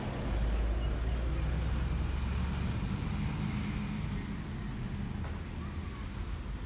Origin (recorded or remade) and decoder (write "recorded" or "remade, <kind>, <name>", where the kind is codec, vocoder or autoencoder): recorded